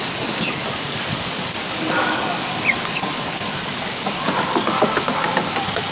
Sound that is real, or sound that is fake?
fake